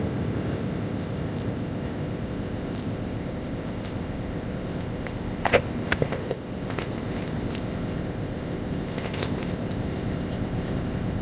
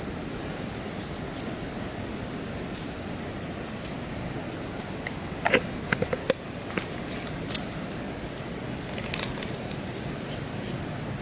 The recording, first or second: second